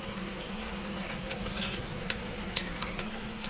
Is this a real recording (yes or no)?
no